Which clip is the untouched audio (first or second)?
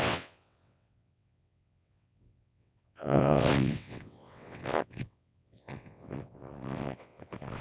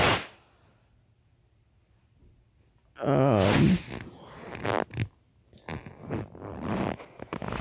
second